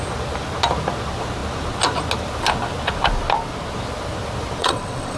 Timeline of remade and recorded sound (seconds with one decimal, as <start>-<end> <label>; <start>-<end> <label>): 0.0-4.6 recorded; 4.6-5.2 remade

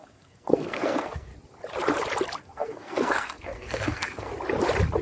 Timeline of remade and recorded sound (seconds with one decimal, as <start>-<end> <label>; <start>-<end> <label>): 0.0-1.3 remade; 1.3-2.4 recorded; 2.4-4.3 remade; 4.3-5.0 recorded

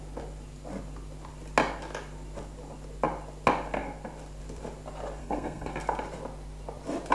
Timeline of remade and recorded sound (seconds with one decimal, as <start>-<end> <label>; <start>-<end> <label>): 0.0-5.2 recorded; 5.2-5.7 remade; 5.7-7.1 recorded

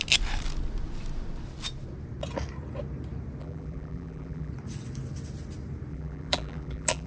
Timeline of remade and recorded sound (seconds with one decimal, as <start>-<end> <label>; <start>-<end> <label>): 0.0-3.4 recorded; 3.4-4.5 remade; 4.5-5.9 recorded; 5.9-7.1 remade

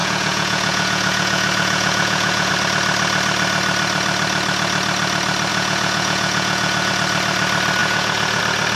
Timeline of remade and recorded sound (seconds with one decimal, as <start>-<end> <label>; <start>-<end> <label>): 0.0-2.5 remade; 2.5-5.5 recorded; 5.5-6.9 remade; 6.9-7.8 recorded; 7.8-8.4 remade; 8.4-8.8 recorded